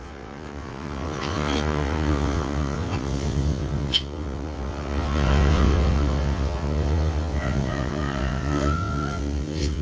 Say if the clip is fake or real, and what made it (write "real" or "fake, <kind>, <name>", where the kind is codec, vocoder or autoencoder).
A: fake, vocoder, WaveNeXt